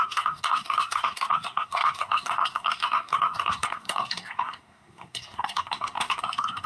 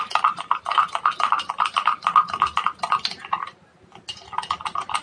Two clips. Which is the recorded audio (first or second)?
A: second